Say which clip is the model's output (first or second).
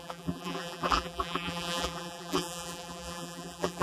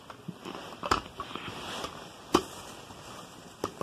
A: first